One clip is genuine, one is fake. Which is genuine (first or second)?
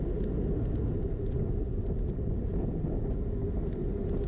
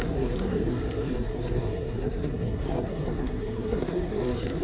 first